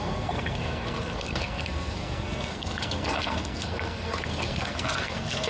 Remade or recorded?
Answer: remade